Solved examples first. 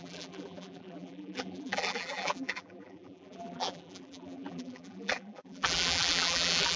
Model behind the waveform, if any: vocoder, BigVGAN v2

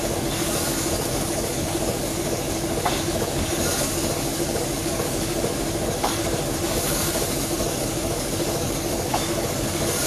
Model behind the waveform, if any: codec, DAC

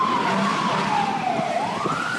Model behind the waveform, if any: vocoder, BigVGAN v2